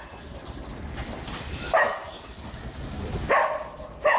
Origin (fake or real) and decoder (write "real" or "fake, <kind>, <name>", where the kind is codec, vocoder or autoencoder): real